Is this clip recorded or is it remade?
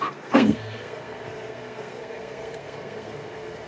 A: remade